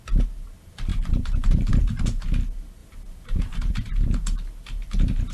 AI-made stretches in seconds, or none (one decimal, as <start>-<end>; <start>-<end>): 0.9-2.0; 2.8-3.7

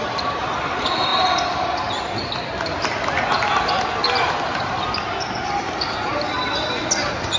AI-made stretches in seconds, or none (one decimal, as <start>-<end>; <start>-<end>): none

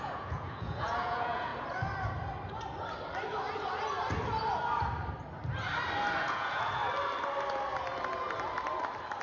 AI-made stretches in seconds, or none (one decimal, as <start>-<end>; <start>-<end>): 0.0-1.5; 6.2-6.8

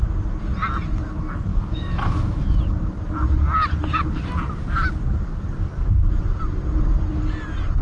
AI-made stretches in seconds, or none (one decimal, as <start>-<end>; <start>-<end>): 1.5-2.6